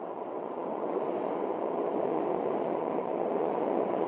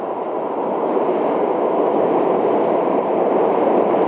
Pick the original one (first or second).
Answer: second